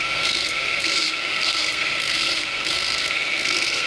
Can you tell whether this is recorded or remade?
remade